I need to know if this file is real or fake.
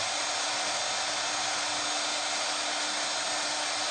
real